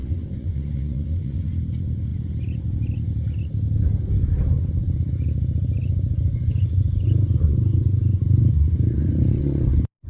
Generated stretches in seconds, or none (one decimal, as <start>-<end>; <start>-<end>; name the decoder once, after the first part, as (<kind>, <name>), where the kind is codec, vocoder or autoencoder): 0.0-1.5 (vocoder, Vocos); 6.3-10.1